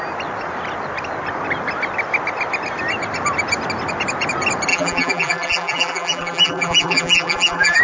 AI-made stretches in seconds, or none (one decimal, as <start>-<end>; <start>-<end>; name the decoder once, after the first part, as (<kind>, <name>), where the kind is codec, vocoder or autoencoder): 4.7-7.8 (vocoder, BigVGAN v2)